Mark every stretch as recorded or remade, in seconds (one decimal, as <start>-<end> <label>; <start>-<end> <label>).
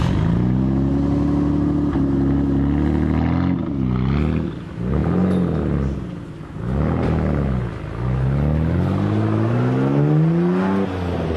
0.0-11.4 recorded